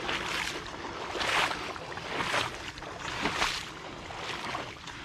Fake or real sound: real